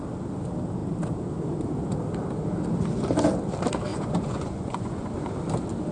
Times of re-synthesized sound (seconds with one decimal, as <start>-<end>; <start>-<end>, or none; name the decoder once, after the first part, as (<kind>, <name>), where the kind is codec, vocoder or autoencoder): 3.9-5.1 (vocoder, Vocos)